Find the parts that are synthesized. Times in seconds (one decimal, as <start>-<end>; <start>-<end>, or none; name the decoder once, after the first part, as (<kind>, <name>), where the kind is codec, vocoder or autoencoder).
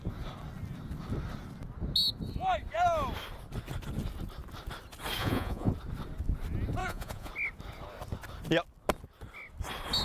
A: 5.2-5.7 (vocoder, Vocos); 6.8-7.3